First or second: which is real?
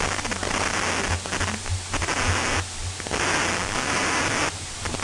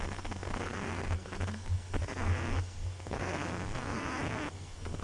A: first